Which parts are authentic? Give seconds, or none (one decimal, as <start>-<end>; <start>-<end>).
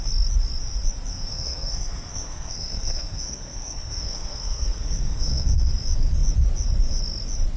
0.0-1.1; 5.7-7.6